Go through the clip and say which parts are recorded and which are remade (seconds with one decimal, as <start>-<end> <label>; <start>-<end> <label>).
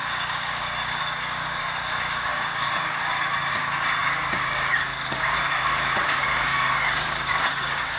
0.0-8.0 remade